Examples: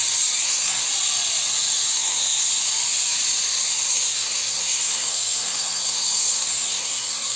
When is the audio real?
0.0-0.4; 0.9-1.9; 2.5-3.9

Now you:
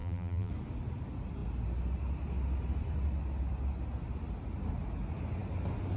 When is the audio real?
0.5-6.0

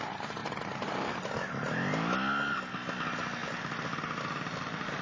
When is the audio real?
0.0-5.0

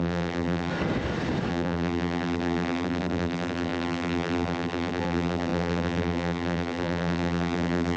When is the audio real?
0.7-1.5

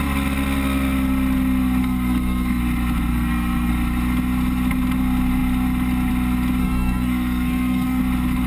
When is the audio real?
0.0-1.8; 2.6-3.1; 3.7-6.6; 8.0-8.5

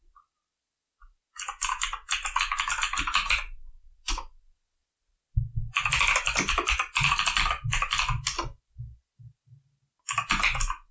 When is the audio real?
0.0-10.9